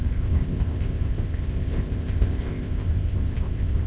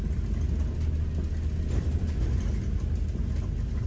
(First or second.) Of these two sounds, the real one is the second